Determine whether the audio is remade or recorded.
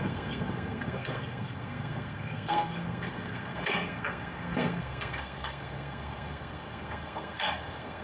remade